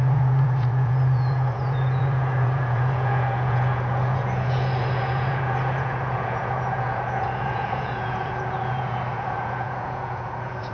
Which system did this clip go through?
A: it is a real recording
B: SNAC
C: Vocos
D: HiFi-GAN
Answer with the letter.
C